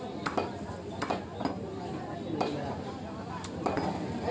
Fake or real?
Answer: real